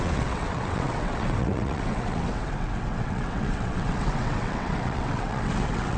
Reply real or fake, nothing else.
fake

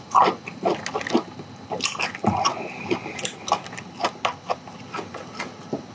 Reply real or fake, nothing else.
real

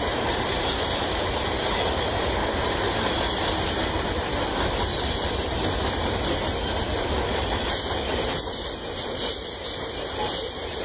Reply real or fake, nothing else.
real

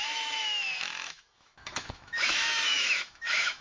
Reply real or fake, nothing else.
fake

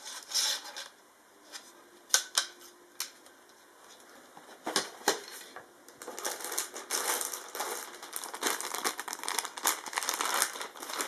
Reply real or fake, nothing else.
real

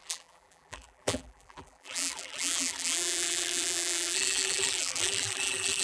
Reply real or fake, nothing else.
fake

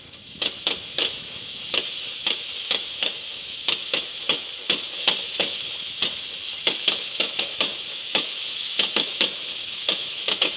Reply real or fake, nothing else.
fake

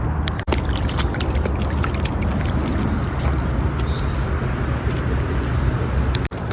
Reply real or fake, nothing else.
real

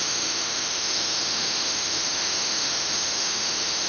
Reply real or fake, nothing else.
fake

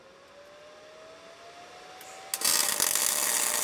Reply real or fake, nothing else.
real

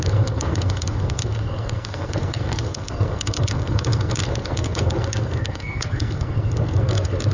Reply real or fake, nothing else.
fake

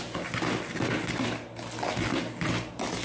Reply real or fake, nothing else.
real